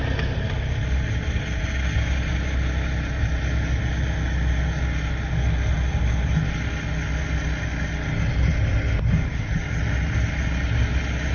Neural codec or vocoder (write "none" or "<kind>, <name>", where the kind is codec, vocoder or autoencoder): none